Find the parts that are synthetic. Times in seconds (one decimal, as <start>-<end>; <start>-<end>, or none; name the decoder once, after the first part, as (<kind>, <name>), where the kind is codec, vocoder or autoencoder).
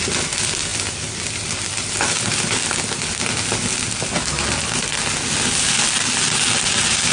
none